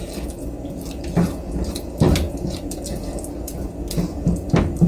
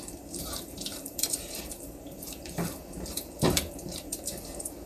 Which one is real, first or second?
first